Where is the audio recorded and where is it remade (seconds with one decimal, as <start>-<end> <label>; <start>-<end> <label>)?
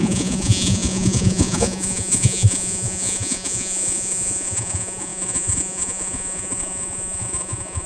0.0-7.9 remade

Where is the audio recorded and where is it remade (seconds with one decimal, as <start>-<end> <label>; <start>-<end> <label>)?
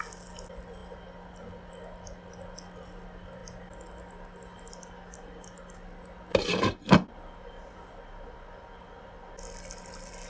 0.0-10.3 recorded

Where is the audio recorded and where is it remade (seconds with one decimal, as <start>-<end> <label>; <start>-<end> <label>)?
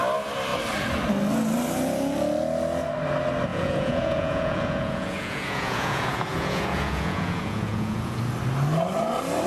0.0-3.5 recorded; 3.5-8.2 remade; 8.2-9.5 recorded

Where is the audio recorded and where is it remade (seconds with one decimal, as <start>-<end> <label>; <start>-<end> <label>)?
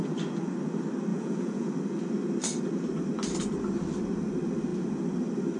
0.0-1.1 recorded; 1.1-1.7 remade; 1.7-5.6 recorded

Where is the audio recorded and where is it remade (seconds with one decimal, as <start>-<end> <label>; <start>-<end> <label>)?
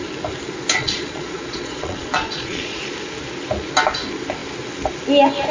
0.0-0.8 recorded; 0.8-2.8 remade; 2.8-5.5 recorded